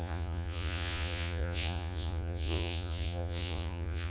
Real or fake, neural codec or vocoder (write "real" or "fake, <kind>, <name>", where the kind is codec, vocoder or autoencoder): fake, vocoder, Vocos